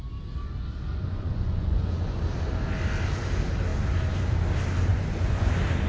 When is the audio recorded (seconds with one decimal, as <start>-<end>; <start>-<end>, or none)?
0.0-0.9; 2.2-4.9; 5.5-5.9